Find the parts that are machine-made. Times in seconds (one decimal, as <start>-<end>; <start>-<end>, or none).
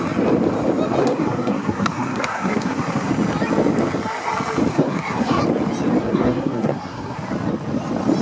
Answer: 1.0-3.1; 4.7-5.4; 6.0-7.2